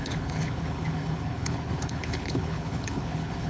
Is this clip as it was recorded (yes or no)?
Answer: no